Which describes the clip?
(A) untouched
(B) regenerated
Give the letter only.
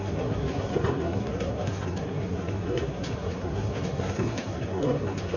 B